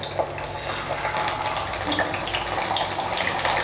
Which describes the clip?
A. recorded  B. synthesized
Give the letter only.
A